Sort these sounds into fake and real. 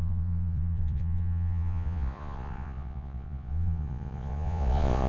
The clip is fake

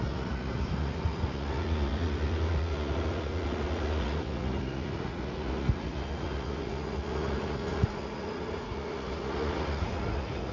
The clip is fake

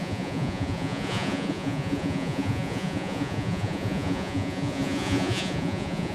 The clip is fake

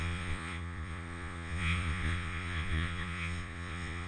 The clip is fake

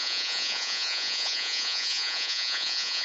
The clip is fake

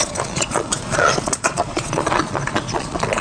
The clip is fake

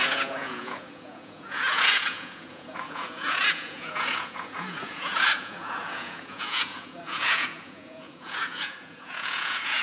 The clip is fake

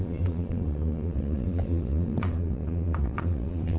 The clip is fake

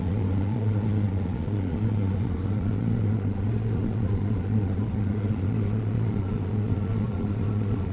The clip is fake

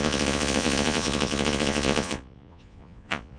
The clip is fake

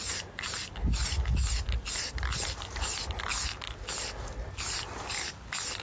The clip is real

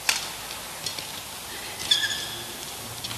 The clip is real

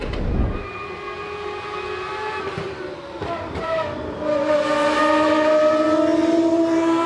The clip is real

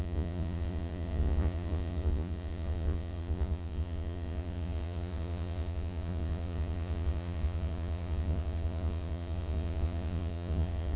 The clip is fake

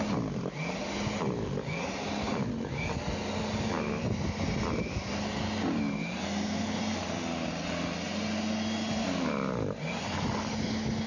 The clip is real